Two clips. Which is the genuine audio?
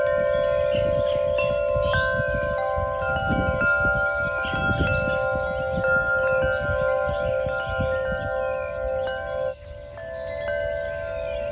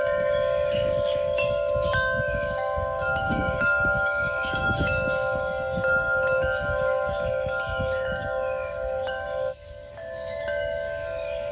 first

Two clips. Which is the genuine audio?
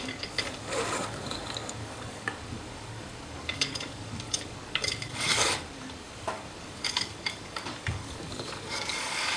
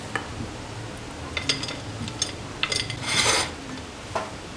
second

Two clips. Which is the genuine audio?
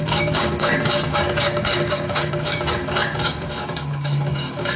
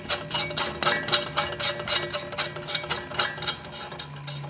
second